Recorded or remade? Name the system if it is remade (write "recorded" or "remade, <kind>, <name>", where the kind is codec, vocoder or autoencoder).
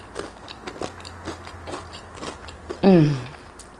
recorded